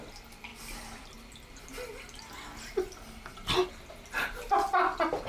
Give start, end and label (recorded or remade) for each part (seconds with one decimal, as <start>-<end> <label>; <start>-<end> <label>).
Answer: 0.0-5.3 recorded